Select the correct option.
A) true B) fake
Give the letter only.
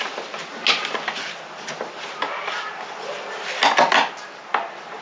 A